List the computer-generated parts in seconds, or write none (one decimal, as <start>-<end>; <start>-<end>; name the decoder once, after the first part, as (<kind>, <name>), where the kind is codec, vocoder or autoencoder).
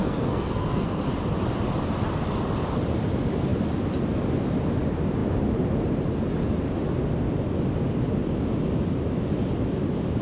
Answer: 0.0-1.0 (codec, SNAC)